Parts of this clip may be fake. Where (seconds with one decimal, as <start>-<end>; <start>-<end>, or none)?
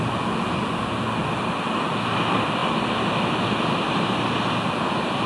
none